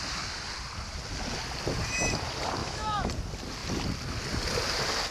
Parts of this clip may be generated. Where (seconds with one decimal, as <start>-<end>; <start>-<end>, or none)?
2.6-3.1